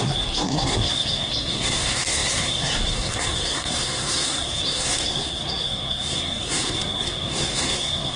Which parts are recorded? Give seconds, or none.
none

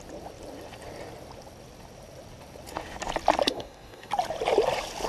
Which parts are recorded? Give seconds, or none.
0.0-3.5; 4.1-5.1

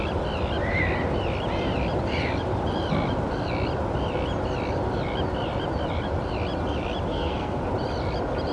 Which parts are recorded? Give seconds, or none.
0.0-7.1; 7.6-8.5

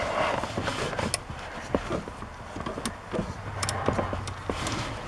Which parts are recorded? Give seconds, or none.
0.0-5.1

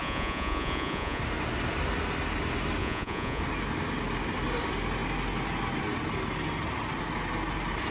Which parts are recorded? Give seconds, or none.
1.2-2.8; 3.4-7.9